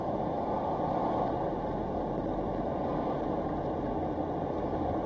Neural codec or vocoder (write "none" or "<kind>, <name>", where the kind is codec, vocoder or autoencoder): none